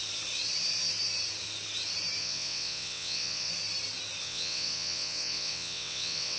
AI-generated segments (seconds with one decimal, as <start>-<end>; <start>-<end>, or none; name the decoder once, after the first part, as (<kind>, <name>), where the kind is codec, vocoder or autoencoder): 2.2-3.5 (vocoder, WaveNeXt); 4.2-6.4